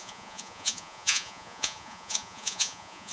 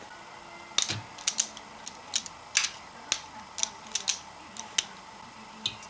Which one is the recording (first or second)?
second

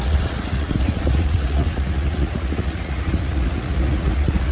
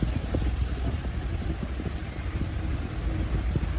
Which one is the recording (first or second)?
second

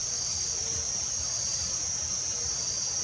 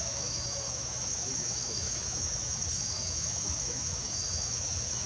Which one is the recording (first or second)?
first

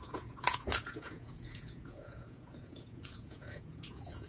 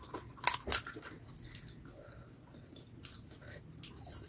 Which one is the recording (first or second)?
second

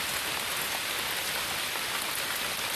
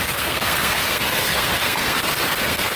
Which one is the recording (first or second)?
first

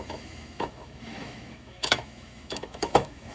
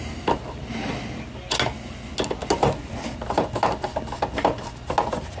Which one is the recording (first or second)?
second